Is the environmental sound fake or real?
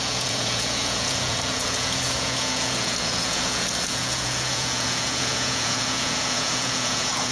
fake